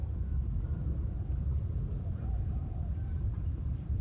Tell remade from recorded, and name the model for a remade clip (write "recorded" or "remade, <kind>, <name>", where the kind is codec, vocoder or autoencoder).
remade, vocoder, BigVGAN v2